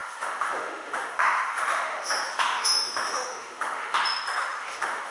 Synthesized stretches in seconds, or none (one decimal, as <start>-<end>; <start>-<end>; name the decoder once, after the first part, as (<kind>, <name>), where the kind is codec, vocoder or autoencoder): 0.0-4.0 (autoencoder, DAC-VAE); 4.6-5.1